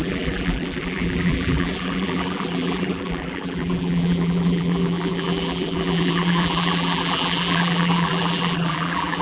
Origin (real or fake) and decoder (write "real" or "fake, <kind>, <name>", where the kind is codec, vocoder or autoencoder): fake, vocoder, BigVGAN v2